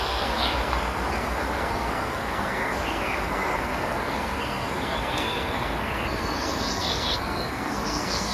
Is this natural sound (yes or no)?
no